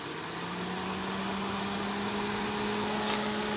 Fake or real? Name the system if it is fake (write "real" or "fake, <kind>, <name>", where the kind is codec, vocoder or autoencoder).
real